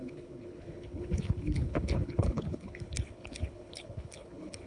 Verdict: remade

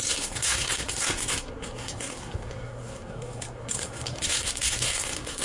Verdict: remade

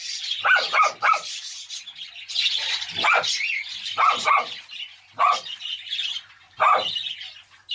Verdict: recorded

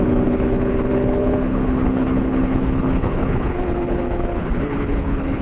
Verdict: remade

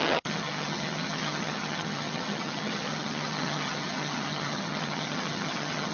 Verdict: remade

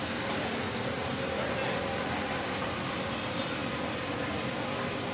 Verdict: recorded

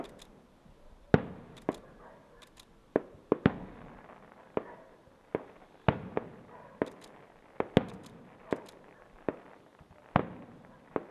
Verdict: recorded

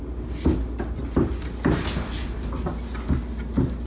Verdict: recorded